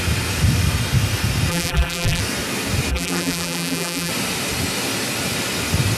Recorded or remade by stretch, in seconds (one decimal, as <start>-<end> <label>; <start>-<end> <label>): 0.0-1.5 recorded; 1.5-2.2 remade; 2.2-2.9 recorded; 2.9-4.1 remade; 4.1-6.0 recorded